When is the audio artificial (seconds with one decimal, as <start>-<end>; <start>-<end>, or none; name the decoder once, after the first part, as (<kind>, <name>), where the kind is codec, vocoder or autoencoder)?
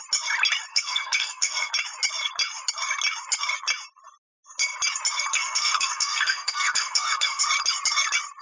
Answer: 0.7-1.7 (codec, SNAC); 5.3-7.4